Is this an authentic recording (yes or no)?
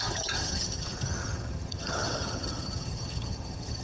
no